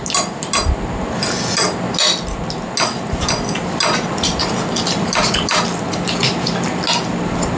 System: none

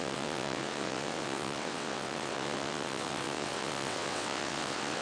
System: vocoder, WaveNeXt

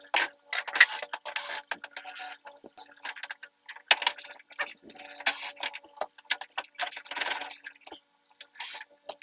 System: none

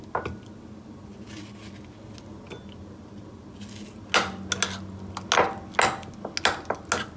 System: none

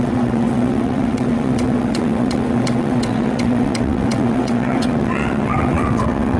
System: vocoder, WaveNeXt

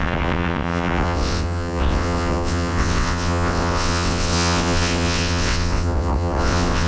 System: vocoder, WaveNeXt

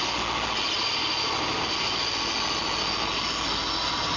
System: none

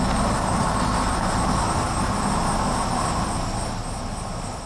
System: none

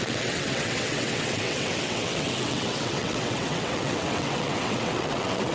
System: vocoder, WaveNeXt